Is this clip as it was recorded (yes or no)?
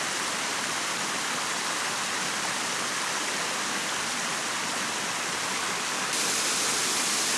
yes